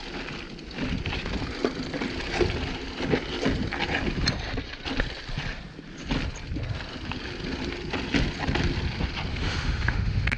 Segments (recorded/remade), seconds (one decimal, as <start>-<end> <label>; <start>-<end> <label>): 0.0-9.3 recorded; 9.3-10.4 remade